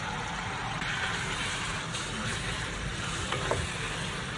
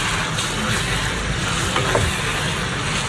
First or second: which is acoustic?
second